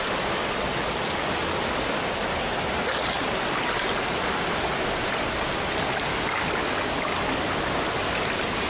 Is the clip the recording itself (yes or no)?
yes